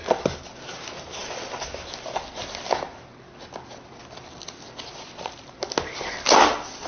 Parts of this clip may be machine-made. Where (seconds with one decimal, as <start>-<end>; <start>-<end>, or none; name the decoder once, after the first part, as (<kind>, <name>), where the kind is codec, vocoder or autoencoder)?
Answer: none